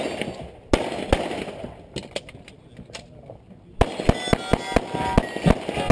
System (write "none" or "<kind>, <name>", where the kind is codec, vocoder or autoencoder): none